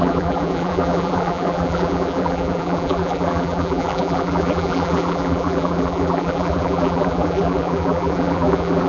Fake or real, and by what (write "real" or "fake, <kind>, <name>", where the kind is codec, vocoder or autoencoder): fake, vocoder, BigVGAN v2